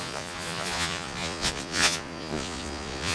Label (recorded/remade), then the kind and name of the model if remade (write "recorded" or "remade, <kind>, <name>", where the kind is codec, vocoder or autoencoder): remade, vocoder, Vocos